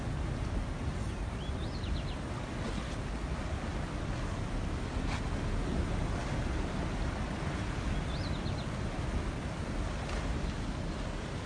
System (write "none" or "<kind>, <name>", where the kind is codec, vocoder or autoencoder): none